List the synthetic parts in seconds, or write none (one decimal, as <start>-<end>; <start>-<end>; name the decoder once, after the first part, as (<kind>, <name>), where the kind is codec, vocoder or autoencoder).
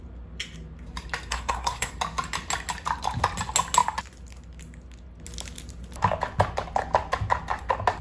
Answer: 1.3-1.9 (codec, SNAC)